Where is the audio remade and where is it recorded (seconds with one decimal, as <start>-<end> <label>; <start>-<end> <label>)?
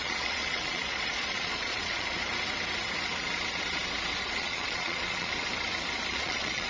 0.0-2.2 remade; 2.2-4.2 recorded; 4.2-5.3 remade; 5.3-6.1 recorded; 6.1-6.7 remade